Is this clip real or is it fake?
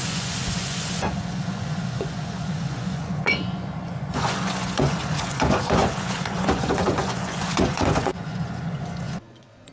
fake